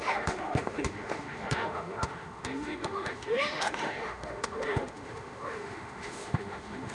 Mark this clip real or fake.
fake